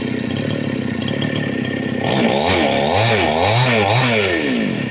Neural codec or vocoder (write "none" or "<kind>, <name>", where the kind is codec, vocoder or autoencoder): none